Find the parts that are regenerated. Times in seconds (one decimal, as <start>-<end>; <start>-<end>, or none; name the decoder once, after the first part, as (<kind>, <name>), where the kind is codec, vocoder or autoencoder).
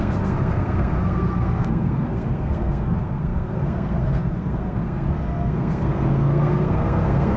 0.0-7.4 (codec, SNAC)